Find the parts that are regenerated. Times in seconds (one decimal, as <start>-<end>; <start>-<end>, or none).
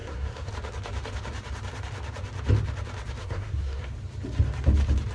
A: 0.0-0.5; 3.2-3.8